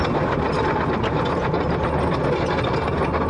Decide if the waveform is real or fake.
real